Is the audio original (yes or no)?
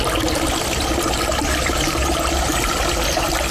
yes